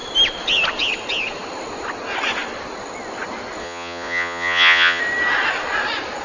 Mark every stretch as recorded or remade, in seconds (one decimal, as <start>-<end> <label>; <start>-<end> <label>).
0.0-3.6 recorded; 3.6-5.0 remade; 5.0-6.2 recorded